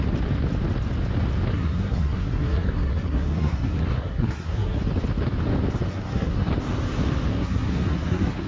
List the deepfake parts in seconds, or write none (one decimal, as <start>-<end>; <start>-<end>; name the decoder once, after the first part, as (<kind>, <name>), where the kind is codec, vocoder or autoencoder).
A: 1.5-4.8 (codec, SNAC); 5.9-6.5; 7.3-8.5